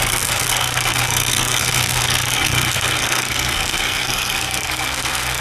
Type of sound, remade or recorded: remade